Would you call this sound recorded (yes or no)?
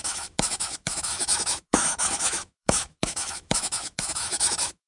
no